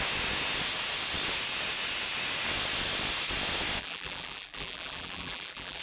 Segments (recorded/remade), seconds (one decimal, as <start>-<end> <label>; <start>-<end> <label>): 0.0-3.8 recorded; 3.8-5.8 remade